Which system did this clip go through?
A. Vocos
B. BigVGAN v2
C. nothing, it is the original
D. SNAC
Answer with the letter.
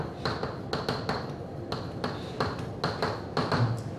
C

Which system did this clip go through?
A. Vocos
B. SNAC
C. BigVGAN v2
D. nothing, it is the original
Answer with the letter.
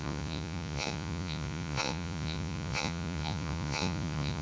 A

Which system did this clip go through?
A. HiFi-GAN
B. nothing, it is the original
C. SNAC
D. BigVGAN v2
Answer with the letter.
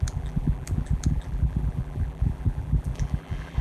D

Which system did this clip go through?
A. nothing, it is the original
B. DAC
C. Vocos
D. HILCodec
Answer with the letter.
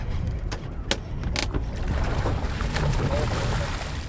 A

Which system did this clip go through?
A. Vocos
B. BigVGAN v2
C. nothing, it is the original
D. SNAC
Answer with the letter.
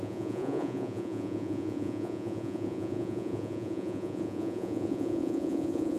A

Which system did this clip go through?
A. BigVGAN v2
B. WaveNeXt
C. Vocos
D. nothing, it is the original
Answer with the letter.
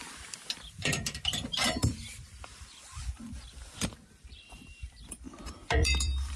A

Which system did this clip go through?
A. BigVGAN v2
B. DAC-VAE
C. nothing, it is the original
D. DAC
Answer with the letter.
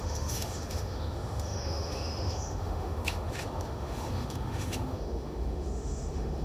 B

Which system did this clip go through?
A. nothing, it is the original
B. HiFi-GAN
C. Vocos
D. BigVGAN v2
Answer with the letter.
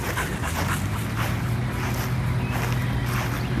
A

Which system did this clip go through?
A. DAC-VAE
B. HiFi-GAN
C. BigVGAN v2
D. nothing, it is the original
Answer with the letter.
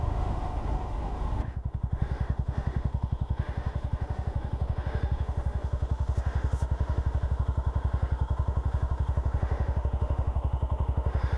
A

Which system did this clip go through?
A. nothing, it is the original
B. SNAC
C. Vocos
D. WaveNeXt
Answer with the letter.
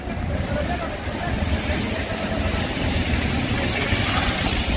A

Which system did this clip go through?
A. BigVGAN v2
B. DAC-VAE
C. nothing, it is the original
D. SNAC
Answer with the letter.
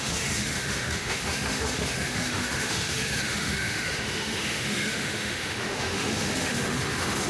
B